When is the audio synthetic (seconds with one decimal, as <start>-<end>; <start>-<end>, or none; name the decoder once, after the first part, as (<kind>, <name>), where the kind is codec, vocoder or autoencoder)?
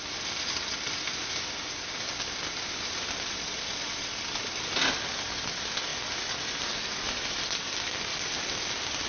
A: none